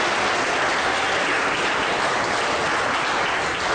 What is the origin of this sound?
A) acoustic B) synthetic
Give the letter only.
A